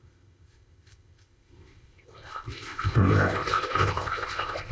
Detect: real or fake fake